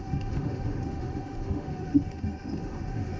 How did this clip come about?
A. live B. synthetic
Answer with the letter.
B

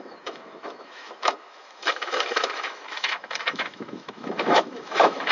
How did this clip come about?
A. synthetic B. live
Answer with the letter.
A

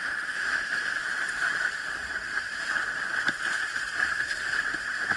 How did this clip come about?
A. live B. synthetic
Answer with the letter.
A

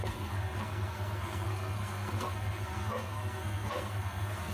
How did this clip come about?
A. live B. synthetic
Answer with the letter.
B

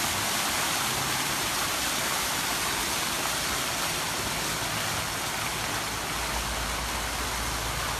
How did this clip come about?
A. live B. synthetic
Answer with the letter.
A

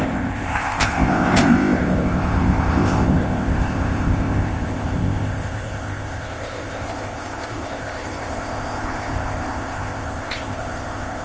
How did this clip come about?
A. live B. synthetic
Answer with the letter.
B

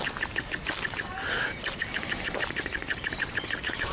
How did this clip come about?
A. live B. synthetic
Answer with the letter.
A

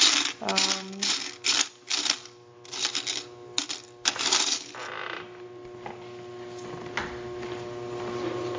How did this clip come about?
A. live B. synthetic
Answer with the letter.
A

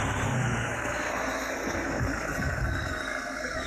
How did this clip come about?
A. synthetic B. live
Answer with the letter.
A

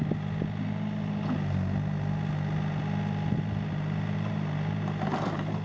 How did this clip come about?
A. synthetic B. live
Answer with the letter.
B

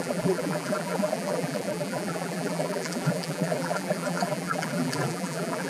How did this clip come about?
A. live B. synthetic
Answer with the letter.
B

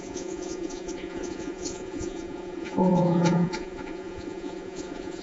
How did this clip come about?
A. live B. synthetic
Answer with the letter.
B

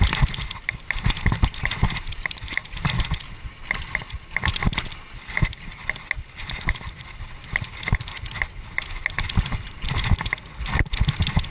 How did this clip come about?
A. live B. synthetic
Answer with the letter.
A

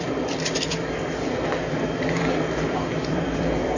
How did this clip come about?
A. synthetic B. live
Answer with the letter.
A